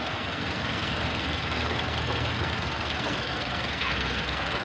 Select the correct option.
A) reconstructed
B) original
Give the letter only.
A